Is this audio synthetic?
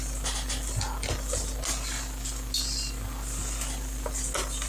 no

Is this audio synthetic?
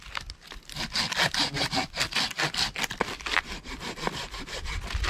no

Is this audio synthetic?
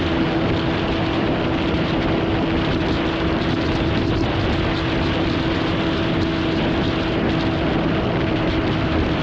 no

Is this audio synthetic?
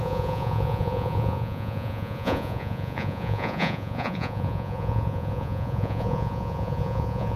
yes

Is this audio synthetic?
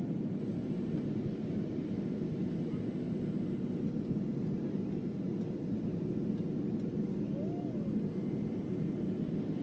no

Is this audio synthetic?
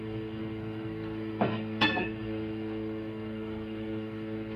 yes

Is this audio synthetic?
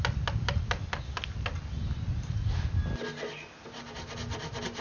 no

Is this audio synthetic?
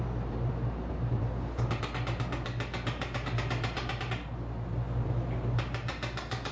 no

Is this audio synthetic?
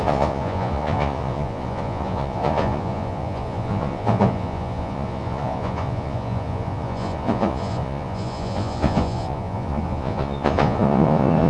yes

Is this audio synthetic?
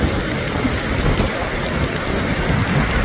no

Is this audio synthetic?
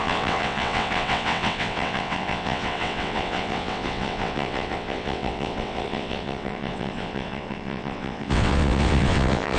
yes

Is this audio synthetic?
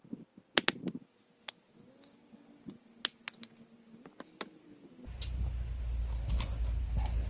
no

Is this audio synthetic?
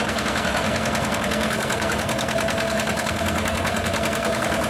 yes